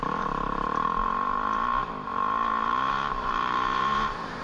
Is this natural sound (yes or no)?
no